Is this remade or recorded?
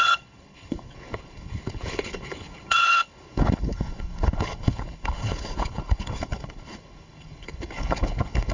remade